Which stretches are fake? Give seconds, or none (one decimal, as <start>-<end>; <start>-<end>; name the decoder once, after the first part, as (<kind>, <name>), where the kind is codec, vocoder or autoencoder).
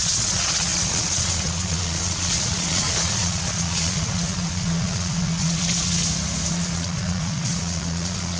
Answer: 0.0-6.0 (vocoder, Vocos); 6.5-8.4